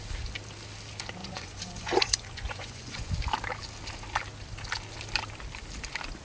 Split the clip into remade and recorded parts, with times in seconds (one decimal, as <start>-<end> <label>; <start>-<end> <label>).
0.0-1.2 recorded; 1.2-3.1 remade; 3.1-6.2 recorded